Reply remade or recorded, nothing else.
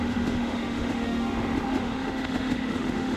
remade